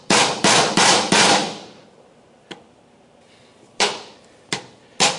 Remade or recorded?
recorded